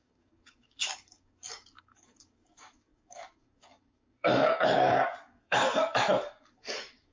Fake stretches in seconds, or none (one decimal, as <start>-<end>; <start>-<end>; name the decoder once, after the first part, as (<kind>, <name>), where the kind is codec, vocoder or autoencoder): 0.0-7.1 (codec, DAC)